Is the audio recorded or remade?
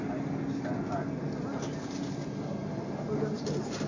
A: recorded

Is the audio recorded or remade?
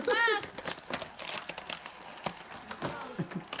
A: recorded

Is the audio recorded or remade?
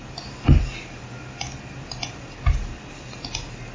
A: recorded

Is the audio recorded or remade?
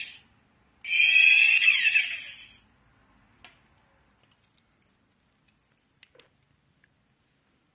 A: recorded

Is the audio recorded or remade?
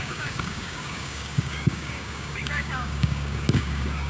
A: remade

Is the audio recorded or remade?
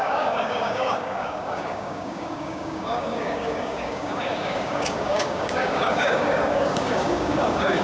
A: remade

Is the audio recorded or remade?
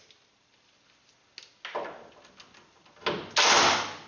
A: recorded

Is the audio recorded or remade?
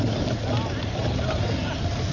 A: recorded